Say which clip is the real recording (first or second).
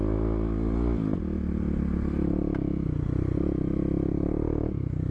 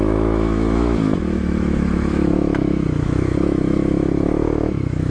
first